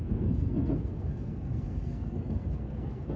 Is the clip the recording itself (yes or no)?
no